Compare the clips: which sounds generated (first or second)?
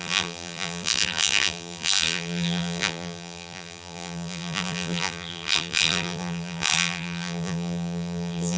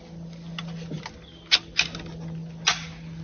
first